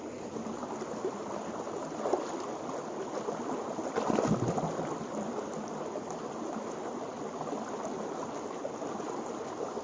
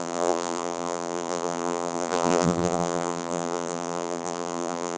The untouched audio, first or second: first